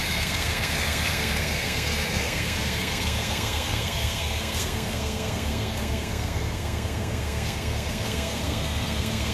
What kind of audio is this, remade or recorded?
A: remade